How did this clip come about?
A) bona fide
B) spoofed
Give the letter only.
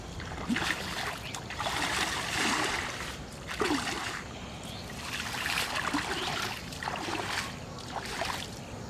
A